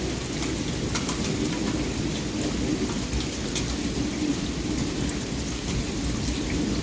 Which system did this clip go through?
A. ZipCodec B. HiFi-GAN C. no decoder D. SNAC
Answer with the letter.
C